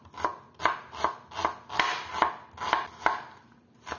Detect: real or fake real